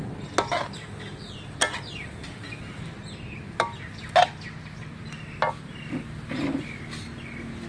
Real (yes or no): yes